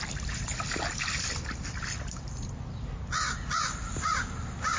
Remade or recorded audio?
recorded